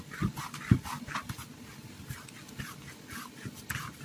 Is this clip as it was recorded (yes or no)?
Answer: yes